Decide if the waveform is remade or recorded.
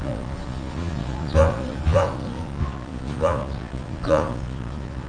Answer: remade